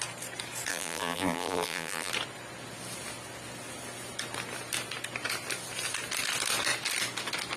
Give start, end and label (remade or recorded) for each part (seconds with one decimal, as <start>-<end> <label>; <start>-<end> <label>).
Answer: 0.0-0.7 recorded; 0.7-2.1 remade; 2.1-7.6 recorded